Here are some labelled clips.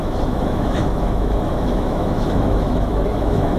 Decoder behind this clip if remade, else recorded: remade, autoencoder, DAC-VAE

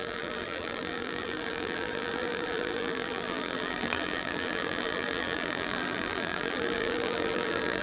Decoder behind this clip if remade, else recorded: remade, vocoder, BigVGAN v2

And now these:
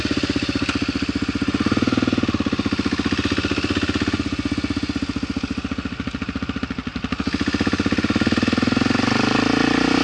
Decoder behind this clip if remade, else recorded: recorded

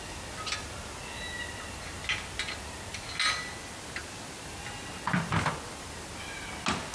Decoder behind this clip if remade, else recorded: recorded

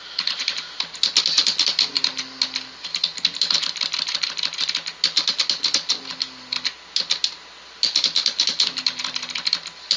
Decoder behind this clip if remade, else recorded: recorded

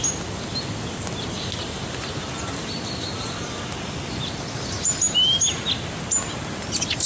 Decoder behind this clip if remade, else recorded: recorded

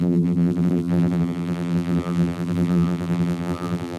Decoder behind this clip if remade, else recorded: remade, vocoder, BigVGAN v2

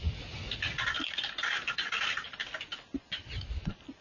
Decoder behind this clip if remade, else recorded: recorded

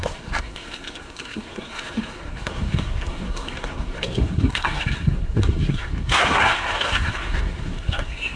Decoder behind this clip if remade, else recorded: remade, codec, SNAC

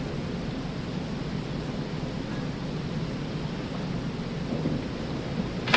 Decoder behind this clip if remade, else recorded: recorded